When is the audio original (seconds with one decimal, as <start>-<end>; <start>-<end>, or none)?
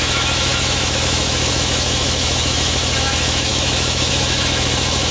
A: none